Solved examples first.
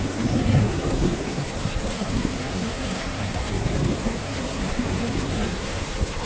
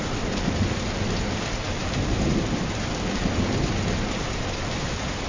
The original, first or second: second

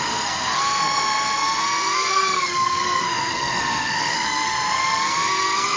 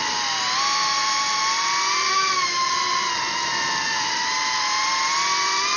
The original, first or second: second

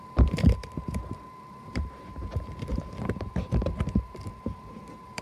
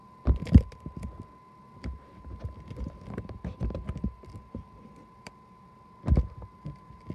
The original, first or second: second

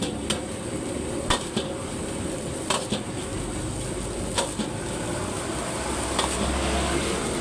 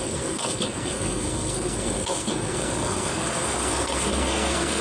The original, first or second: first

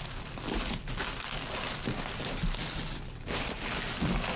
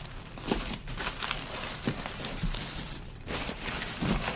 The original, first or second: first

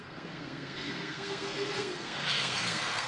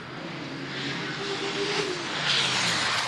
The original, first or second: second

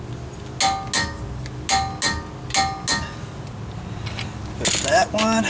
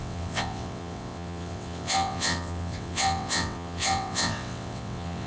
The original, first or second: first